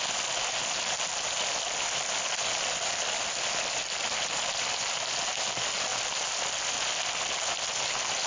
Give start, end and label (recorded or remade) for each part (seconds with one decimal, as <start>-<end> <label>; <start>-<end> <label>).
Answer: 0.0-8.3 recorded